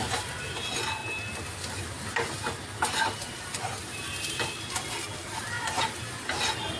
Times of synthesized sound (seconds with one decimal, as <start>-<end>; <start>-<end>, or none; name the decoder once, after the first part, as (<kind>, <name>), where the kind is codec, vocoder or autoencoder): 3.8-6.0 (vocoder, BigVGAN v2)